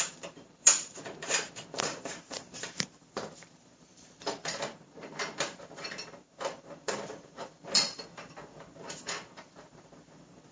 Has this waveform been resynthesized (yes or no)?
yes